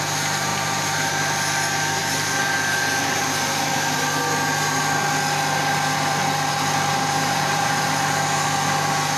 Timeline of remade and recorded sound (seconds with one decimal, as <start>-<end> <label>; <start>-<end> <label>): 0.0-0.5 recorded; 0.5-1.1 remade; 1.1-6.9 recorded; 6.9-7.9 remade; 7.9-9.2 recorded